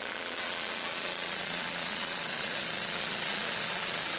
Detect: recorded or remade remade